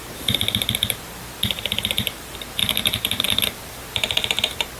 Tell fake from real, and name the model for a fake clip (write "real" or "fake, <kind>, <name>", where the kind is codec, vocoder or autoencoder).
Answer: fake, vocoder, BigVGAN v2